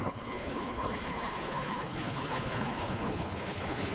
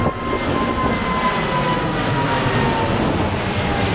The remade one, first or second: first